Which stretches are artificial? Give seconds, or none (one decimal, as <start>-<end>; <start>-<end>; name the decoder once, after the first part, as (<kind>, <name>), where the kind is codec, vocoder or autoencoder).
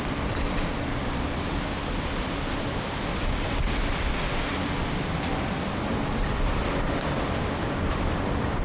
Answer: none